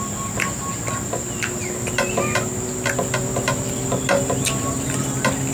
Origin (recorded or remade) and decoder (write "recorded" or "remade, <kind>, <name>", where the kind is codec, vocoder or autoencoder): recorded